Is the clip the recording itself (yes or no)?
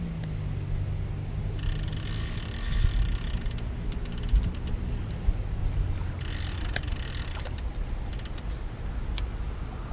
yes